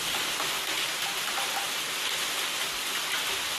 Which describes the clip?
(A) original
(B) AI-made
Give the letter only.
A